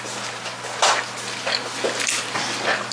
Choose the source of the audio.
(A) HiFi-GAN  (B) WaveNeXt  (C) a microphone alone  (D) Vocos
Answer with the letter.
C